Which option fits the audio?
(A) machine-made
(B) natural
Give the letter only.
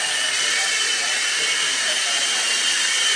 A